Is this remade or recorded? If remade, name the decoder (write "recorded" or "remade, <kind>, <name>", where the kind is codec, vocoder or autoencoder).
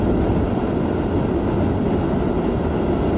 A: recorded